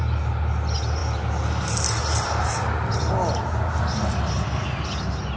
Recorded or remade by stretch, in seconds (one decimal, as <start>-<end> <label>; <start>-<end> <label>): 0.0-5.4 recorded